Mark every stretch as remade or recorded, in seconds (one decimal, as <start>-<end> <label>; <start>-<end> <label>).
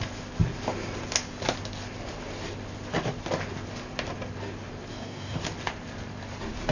0.0-4.9 recorded; 4.9-5.4 remade; 5.4-6.7 recorded